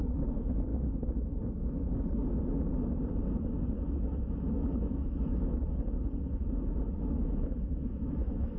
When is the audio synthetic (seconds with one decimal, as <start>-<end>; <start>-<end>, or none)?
0.0-0.7; 3.8-5.4; 6.8-8.6